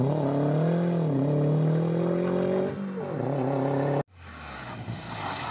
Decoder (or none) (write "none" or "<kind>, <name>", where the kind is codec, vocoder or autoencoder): none